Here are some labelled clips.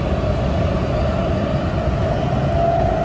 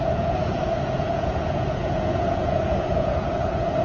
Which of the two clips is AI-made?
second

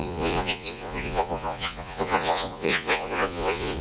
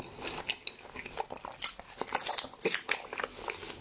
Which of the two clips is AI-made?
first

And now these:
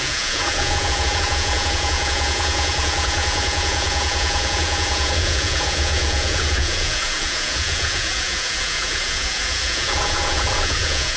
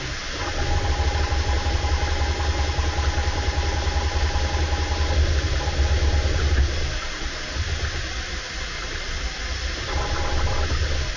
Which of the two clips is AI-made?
first